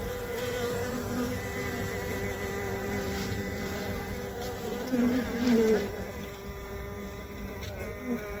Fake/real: fake